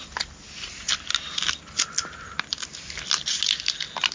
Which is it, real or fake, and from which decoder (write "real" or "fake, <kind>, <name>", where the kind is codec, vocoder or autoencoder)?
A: real